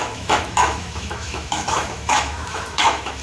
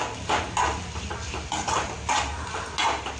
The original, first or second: second